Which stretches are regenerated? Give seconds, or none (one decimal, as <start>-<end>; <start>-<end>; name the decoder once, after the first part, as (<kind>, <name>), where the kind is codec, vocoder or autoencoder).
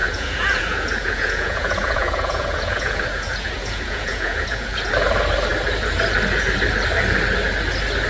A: 0.0-4.9 (vocoder, Vocos)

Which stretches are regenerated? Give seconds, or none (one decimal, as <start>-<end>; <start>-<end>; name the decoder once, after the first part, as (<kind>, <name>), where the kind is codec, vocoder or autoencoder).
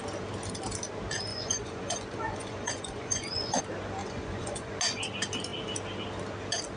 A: 1.3-3.6 (vocoder, Vocos); 4.0-4.7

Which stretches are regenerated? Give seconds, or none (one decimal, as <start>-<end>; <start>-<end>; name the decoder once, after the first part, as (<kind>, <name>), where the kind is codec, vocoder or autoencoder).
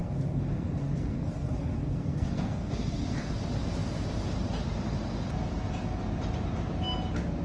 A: 0.0-3.3 (codec, SNAC)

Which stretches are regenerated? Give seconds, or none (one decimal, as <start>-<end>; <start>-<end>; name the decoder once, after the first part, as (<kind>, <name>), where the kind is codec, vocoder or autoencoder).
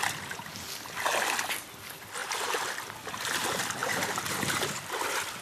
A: 2.2-2.8 (vocoder, BigVGAN v2); 3.8-4.6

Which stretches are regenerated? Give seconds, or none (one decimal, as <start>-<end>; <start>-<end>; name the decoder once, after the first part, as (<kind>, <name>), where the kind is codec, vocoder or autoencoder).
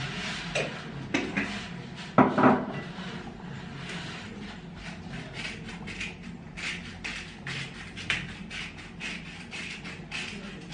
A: none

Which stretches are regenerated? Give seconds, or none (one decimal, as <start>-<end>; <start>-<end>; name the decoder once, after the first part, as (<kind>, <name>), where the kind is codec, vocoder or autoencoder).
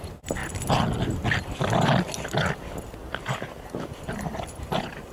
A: none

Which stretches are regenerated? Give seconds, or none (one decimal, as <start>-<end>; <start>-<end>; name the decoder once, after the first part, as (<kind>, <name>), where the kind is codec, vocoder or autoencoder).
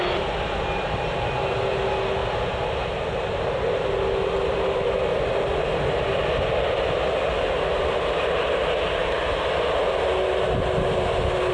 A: none